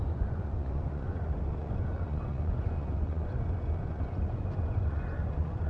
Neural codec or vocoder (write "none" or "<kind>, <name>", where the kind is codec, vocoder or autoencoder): vocoder, Vocos